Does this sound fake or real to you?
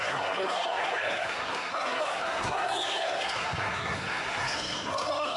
fake